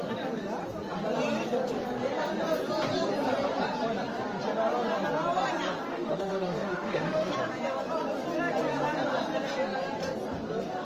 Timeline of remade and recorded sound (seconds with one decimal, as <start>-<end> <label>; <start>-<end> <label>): 0.0-5.9 recorded; 5.9-7.3 remade; 7.3-10.8 recorded